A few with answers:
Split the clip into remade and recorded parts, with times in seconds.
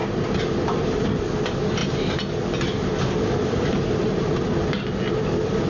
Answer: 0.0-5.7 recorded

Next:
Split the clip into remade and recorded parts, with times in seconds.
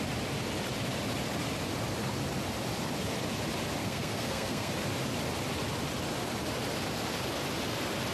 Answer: 0.0-3.8 recorded; 3.8-4.7 remade; 4.7-8.1 recorded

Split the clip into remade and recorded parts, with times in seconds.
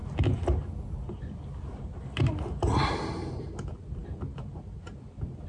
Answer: 0.0-5.5 recorded